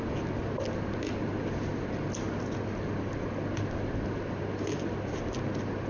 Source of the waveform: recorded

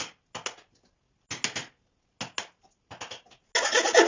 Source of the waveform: recorded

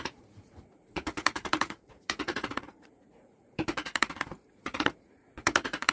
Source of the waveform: remade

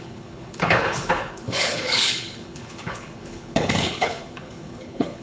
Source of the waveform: remade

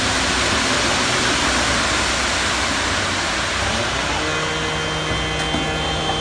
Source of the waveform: recorded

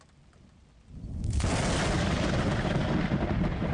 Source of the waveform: recorded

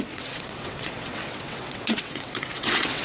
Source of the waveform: remade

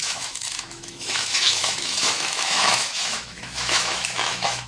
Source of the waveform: remade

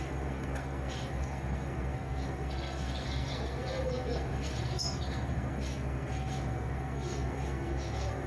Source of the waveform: remade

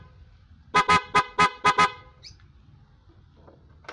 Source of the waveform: recorded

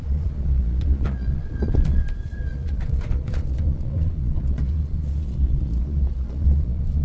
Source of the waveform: remade